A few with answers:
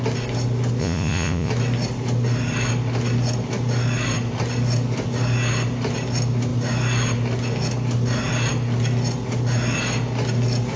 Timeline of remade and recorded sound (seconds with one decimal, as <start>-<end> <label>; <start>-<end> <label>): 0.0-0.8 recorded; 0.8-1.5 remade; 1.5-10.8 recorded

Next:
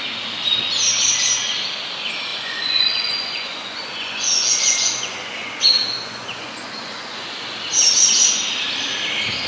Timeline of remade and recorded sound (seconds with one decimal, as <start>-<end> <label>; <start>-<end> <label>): 0.0-2.3 recorded; 2.3-7.5 remade; 7.5-9.5 recorded

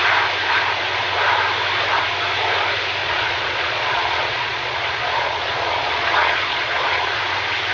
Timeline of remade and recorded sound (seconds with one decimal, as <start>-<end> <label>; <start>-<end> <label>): 0.0-3.0 recorded; 3.0-7.2 remade; 7.2-7.7 recorded

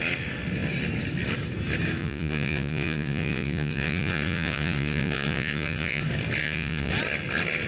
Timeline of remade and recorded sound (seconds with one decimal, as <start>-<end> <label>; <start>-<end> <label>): 0.0-2.0 recorded; 2.0-6.0 remade; 6.0-6.4 recorded; 6.4-6.9 remade; 6.9-7.7 recorded

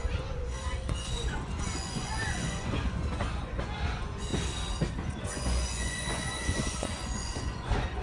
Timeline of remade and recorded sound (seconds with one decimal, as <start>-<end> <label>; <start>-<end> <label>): 0.0-4.3 remade; 4.3-4.9 recorded; 4.9-8.0 remade

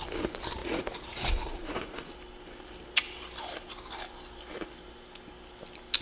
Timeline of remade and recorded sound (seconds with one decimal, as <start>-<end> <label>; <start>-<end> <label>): 0.0-0.6 recorded; 0.6-2.1 remade; 2.1-6.0 recorded